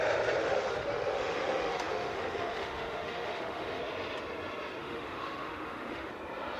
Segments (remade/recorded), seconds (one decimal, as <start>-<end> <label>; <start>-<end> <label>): 0.0-0.4 recorded; 0.4-3.8 remade; 3.8-4.8 recorded; 4.8-6.1 remade; 6.1-6.6 recorded